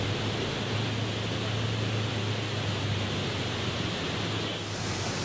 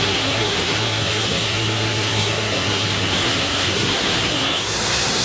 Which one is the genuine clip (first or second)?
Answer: first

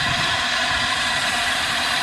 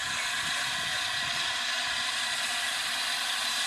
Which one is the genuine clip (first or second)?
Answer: second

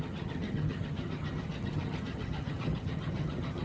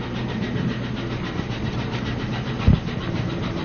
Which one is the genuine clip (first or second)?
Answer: second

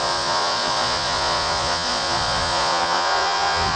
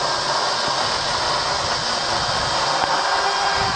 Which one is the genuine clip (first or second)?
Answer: second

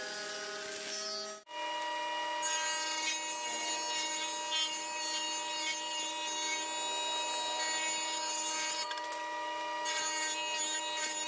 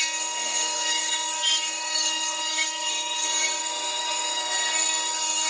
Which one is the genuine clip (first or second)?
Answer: first